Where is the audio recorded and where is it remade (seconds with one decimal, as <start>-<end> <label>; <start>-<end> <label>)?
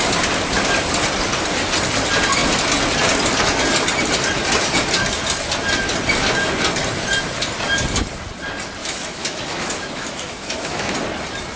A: 0.0-8.8 recorded; 8.8-10.9 remade; 10.9-11.6 recorded